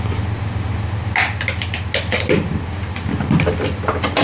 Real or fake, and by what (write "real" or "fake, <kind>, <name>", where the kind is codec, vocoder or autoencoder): real